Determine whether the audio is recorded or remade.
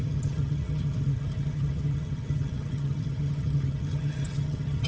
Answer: remade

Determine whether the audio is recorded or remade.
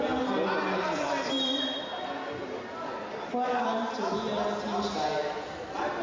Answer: recorded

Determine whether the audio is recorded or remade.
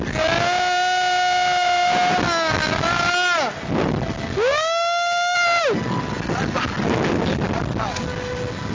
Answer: recorded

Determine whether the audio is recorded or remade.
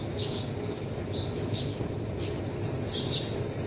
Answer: recorded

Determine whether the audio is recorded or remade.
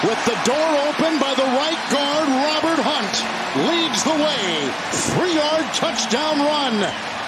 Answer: recorded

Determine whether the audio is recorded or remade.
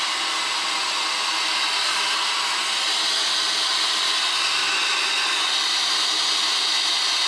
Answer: recorded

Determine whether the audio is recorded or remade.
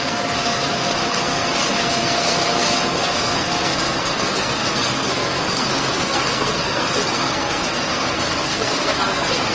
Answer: remade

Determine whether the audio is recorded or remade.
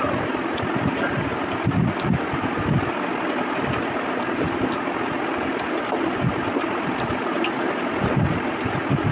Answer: recorded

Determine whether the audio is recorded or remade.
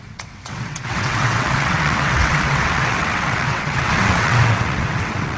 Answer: remade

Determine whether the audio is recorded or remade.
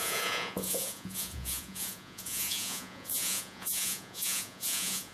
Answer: remade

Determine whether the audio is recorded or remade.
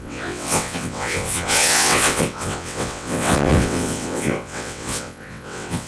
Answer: remade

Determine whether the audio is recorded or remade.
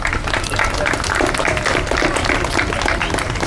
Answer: recorded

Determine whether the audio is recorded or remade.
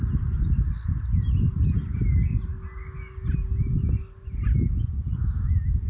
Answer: recorded